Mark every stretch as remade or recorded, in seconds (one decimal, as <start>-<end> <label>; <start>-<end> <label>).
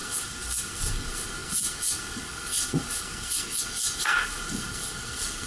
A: 0.0-5.5 remade